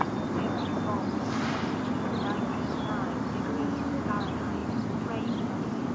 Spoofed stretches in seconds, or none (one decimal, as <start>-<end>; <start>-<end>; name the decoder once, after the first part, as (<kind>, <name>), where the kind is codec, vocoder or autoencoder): none